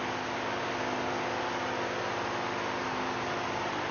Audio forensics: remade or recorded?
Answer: recorded